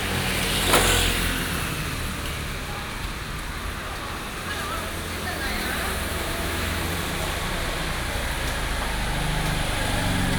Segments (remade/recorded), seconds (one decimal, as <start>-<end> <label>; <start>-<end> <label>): 0.0-6.1 recorded; 6.1-6.8 remade; 6.8-10.4 recorded